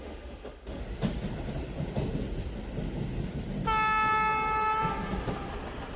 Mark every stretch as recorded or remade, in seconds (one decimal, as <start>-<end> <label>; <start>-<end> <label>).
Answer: 0.0-0.8 remade; 0.8-6.0 recorded